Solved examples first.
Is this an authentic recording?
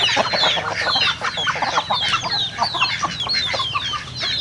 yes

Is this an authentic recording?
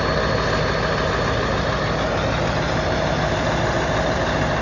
yes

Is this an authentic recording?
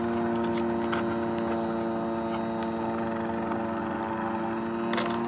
yes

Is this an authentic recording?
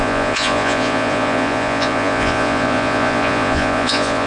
no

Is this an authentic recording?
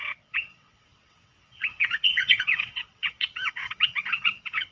no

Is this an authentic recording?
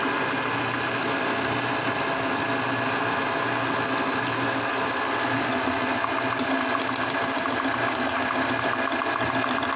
yes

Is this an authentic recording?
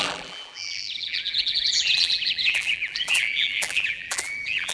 no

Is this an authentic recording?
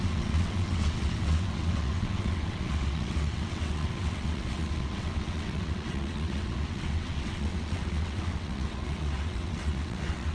no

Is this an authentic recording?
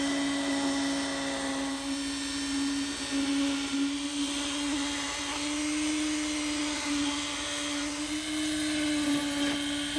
yes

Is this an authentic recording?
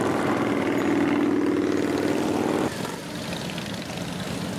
yes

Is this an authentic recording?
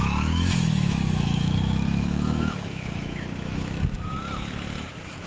no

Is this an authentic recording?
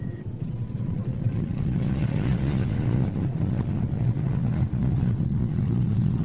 no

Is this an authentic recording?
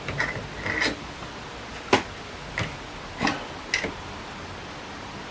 yes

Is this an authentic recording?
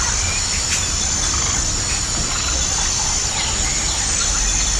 yes